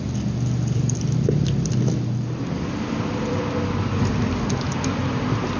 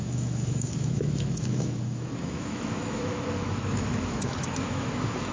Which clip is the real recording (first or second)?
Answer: first